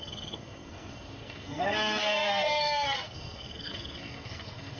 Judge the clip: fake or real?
fake